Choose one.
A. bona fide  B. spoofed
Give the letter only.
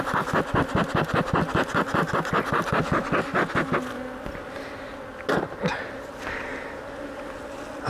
A